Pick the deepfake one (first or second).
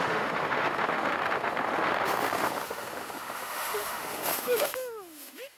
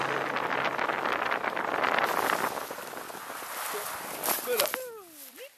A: first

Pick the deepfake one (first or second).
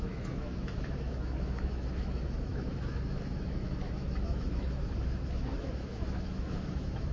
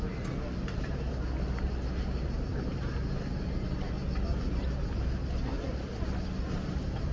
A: first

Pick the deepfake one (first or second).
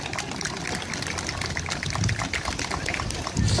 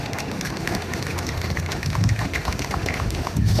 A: second